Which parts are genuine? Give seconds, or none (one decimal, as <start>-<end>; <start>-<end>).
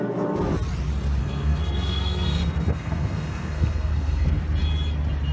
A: 0.0-1.2; 4.4-5.3